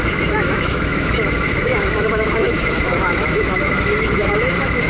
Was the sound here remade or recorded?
remade